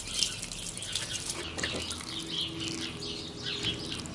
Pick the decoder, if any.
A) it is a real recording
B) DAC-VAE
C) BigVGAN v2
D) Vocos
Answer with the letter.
A